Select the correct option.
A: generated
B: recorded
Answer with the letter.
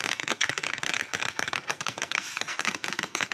A